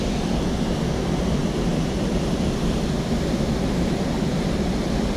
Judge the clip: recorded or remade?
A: recorded